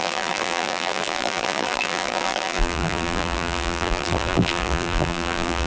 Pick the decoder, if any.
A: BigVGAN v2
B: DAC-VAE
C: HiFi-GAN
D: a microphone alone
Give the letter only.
A